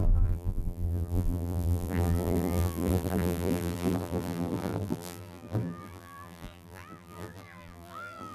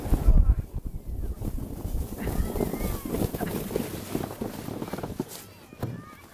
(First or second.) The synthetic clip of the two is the first